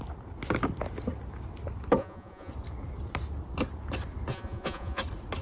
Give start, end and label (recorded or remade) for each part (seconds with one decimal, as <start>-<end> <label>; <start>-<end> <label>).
0.0-2.0 recorded; 2.0-2.5 remade; 2.5-4.3 recorded; 4.3-5.0 remade; 5.0-5.4 recorded